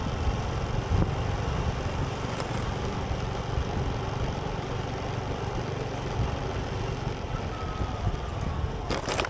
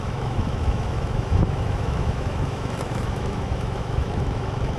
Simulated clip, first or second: second